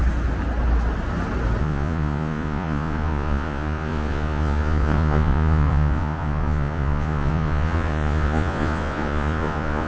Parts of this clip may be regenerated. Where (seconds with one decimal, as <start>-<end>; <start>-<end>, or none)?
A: 1.6-9.9